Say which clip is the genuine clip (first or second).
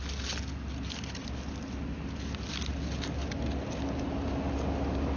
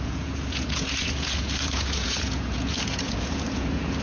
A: first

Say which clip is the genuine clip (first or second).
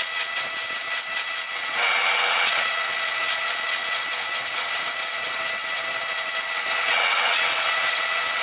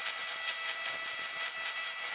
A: second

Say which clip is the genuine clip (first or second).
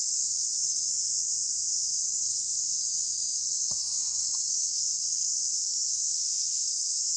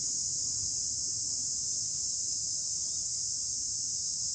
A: second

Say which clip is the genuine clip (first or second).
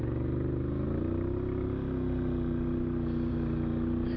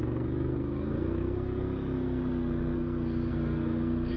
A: first